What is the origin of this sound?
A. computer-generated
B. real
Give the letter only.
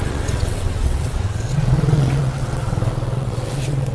A